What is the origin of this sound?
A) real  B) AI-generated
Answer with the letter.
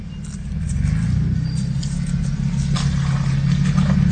A